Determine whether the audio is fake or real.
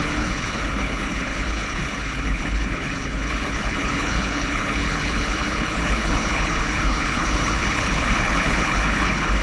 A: fake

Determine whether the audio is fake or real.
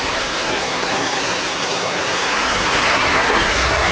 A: fake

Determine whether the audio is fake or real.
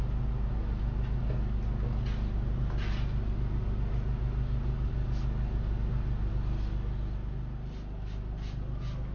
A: real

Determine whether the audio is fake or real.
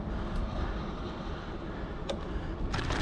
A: fake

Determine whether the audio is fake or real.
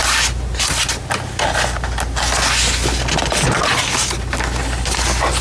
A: real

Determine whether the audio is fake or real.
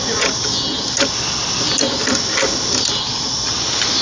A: real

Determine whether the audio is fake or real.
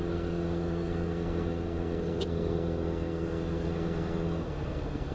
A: fake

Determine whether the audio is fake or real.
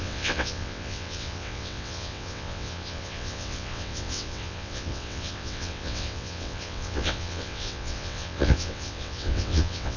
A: fake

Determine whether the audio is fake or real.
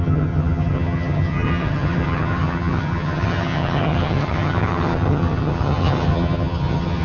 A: fake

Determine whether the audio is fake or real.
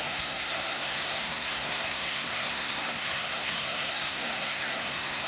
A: fake